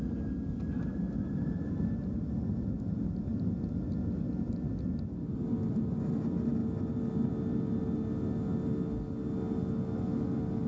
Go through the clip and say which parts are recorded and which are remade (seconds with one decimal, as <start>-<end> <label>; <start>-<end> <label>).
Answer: 0.0-10.7 recorded